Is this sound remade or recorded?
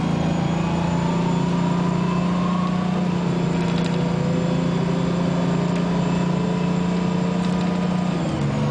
recorded